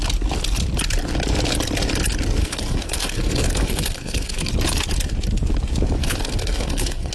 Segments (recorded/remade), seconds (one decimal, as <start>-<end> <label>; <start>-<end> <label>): 0.0-2.4 recorded; 2.4-4.5 remade; 4.5-6.0 recorded; 6.0-7.1 remade